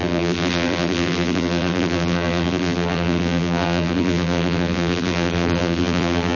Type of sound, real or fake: fake